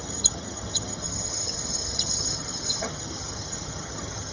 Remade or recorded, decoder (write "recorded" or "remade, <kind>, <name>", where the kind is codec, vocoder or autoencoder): remade, vocoder, HiFi-GAN